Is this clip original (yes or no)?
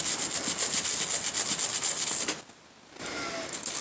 yes